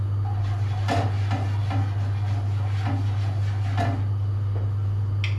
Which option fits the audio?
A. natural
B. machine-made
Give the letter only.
A